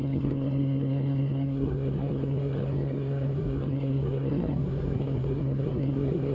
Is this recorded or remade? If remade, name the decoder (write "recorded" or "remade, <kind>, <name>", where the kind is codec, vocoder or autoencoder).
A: remade, codec, SNAC